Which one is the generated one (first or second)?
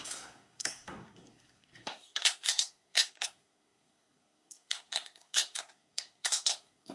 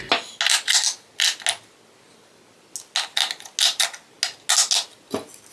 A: first